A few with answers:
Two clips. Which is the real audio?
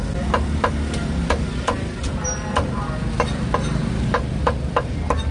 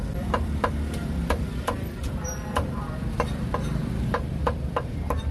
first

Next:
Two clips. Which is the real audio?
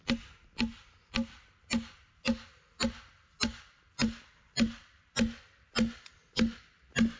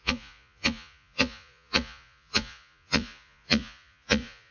first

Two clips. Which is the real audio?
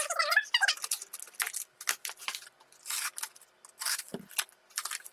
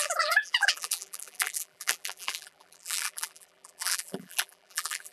first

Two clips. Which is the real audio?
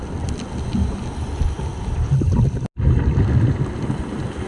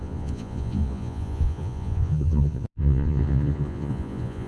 first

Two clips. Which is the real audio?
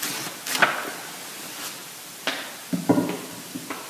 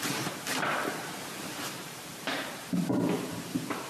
first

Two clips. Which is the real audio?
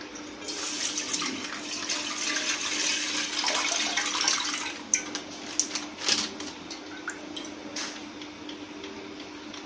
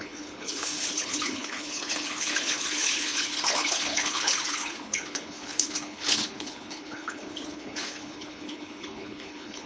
first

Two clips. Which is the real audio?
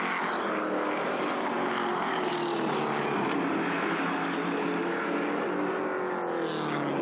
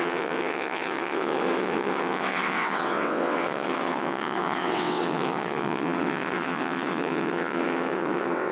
first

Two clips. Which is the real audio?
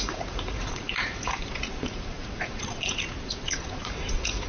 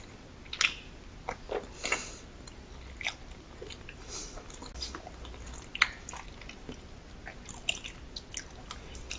second